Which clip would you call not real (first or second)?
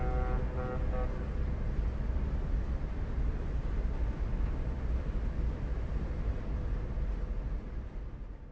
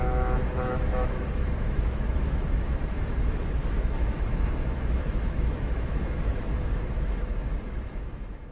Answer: second